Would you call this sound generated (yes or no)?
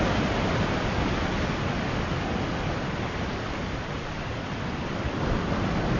no